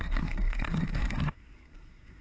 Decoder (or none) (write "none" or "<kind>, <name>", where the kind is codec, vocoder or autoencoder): codec, SNAC